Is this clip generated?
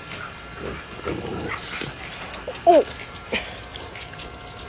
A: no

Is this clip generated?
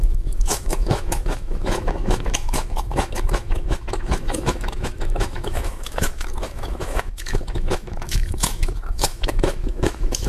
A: yes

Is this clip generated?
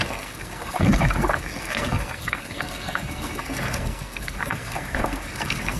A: yes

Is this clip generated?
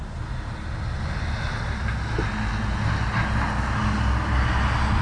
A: no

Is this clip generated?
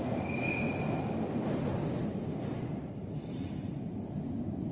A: no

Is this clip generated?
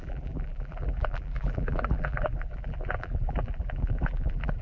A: yes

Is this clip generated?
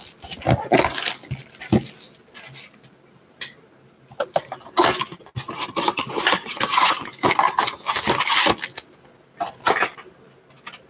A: no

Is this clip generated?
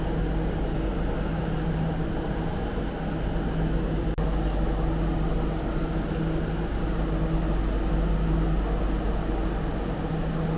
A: no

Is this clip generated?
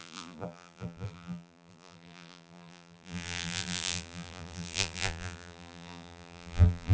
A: yes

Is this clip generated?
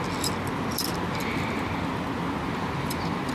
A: no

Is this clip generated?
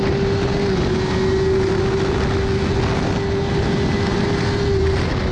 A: no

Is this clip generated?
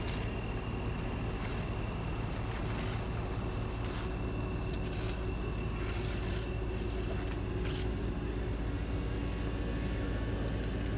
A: no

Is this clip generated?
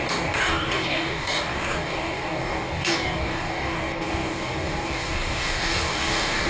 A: yes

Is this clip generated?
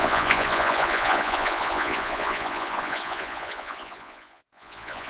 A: yes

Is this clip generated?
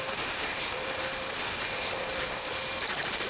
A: no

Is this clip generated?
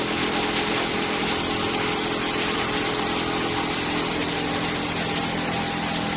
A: no